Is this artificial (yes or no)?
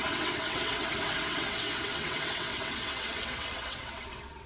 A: yes